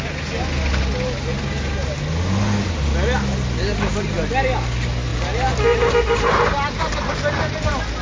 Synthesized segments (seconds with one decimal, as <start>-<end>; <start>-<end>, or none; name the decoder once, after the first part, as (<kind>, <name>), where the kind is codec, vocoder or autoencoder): 5.1-7.1 (vocoder, BigVGAN v2)